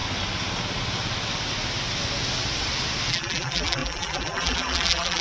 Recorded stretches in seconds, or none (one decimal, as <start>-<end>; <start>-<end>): 0.0-3.1